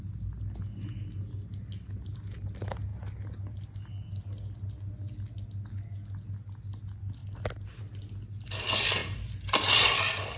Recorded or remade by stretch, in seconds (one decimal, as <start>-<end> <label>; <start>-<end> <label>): 0.0-10.4 recorded